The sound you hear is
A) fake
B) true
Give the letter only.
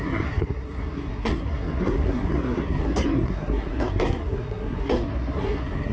A